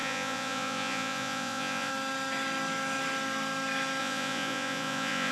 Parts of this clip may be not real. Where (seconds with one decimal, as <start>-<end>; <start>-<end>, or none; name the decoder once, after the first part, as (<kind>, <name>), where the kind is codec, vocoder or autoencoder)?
0.0-1.9 (vocoder, Vocos); 4.0-5.3